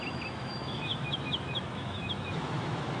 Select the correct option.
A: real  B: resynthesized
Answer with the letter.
B